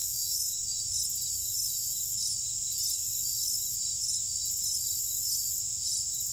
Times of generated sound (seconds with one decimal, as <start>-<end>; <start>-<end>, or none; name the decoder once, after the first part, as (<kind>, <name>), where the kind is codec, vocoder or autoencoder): 0.0-0.8 (autoencoder, DAC-VAE)